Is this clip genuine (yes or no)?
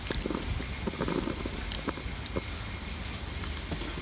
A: yes